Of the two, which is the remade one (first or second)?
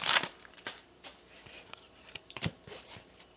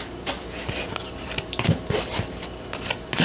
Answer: first